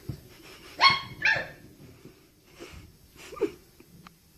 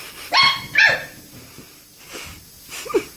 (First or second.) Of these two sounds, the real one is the second